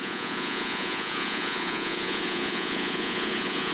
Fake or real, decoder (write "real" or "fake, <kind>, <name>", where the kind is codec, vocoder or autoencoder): fake, vocoder, Vocos